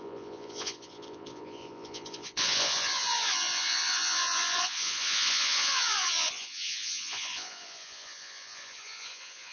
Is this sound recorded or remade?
remade